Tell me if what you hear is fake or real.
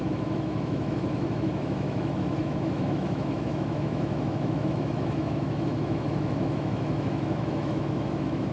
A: fake